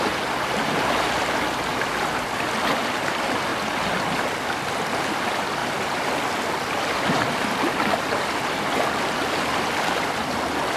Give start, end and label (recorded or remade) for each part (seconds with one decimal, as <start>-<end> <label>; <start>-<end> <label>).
0.0-10.8 recorded